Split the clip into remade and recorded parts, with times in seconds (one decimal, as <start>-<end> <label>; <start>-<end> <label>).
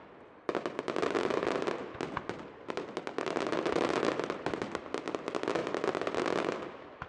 0.0-3.5 recorded; 3.5-4.8 remade; 4.8-5.6 recorded; 5.6-6.2 remade; 6.2-7.1 recorded